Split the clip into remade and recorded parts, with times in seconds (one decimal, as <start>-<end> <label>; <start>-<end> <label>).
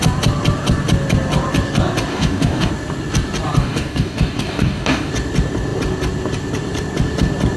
0.0-2.1 recorded; 2.1-2.7 remade; 2.7-3.6 recorded; 3.6-5.1 remade; 5.1-7.6 recorded